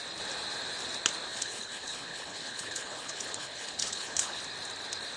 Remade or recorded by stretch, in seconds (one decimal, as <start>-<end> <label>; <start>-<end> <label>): 0.0-1.3 recorded; 1.3-4.4 remade; 4.4-5.2 recorded